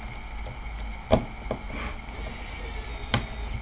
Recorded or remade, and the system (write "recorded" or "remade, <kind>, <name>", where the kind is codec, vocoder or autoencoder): recorded